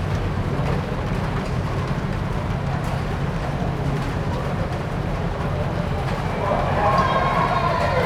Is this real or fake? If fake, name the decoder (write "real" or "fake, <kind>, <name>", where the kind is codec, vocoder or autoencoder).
fake, vocoder, BigVGAN v2